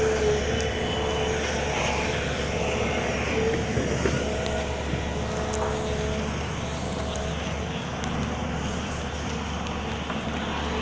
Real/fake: real